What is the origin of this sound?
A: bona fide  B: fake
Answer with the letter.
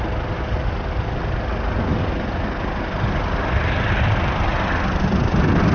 A